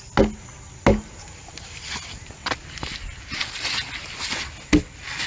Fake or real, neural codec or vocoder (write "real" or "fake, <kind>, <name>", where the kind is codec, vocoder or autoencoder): real